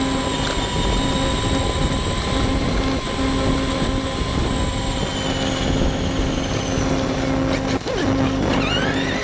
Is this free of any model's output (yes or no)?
yes